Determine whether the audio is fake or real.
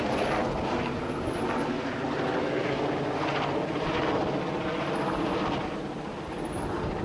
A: real